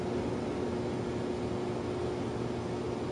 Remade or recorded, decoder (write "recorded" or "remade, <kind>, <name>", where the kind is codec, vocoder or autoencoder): recorded